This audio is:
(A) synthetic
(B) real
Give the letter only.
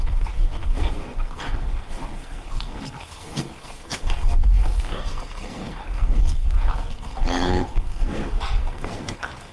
A